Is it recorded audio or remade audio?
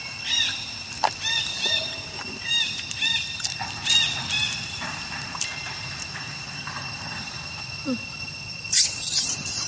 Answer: remade